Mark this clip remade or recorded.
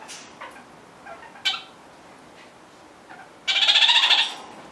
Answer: recorded